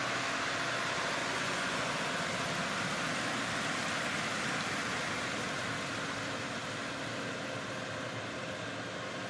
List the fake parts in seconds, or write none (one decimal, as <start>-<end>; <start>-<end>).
1.2-1.9